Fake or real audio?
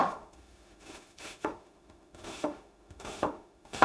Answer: fake